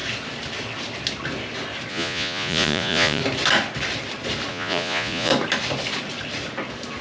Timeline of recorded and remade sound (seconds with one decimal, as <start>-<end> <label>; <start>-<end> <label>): 0.0-1.9 recorded; 1.9-3.2 remade; 3.2-4.5 recorded; 4.5-5.3 remade; 5.3-7.0 recorded